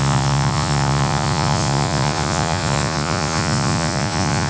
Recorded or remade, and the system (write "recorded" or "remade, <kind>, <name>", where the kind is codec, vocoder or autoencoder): remade, vocoder, Vocos